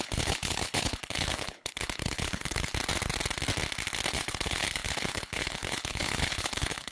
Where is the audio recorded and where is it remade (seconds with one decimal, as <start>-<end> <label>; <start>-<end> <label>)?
0.0-2.7 remade; 2.7-4.1 recorded; 4.1-6.9 remade